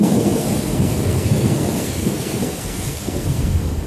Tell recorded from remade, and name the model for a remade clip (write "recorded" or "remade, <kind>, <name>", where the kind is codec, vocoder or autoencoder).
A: remade, codec, SNAC